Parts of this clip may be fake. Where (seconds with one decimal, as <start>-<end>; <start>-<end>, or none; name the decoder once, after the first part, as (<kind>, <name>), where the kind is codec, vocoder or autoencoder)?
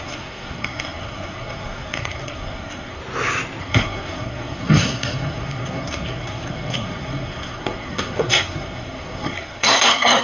0.0-3.0 (codec, SNAC); 3.6-10.2